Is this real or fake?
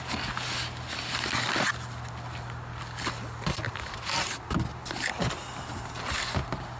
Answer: real